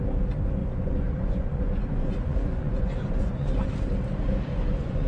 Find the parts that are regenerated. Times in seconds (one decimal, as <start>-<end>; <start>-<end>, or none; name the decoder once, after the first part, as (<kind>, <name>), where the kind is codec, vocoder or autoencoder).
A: 0.6-3.7 (vocoder, Vocos); 4.5-5.1